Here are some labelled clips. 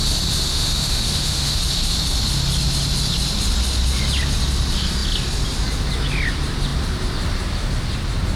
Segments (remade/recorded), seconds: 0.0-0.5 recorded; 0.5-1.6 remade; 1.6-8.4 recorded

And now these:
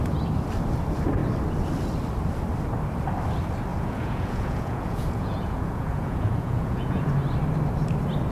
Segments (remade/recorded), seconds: 0.0-3.7 recorded; 3.7-7.1 remade; 7.1-8.3 recorded

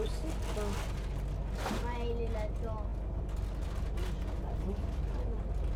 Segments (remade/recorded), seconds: 0.0-5.8 recorded

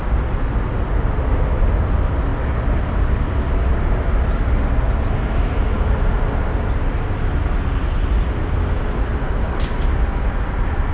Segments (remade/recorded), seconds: 0.0-10.9 recorded

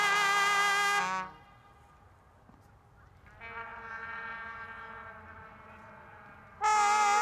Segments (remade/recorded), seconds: 0.0-7.2 recorded

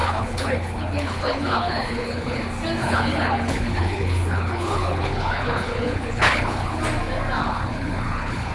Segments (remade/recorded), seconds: 0.0-2.4 remade; 2.4-2.8 recorded; 2.8-6.8 remade; 6.8-7.4 recorded; 7.4-8.5 remade

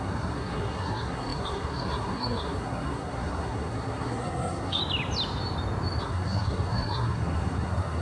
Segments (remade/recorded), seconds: 0.0-4.8 remade; 4.8-6.0 recorded; 6.0-8.0 remade

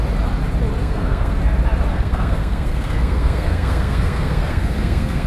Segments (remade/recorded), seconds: 0.0-0.8 recorded; 0.8-1.4 remade; 1.4-1.9 recorded; 1.9-5.3 remade